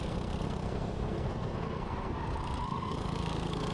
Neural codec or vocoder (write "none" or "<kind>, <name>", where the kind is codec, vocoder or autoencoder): codec, SNAC